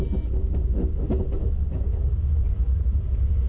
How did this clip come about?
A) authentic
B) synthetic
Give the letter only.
A